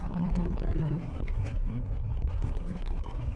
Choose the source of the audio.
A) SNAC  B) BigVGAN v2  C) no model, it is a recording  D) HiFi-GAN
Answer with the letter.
A